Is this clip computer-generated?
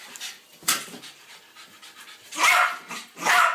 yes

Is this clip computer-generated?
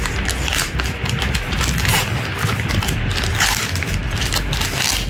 no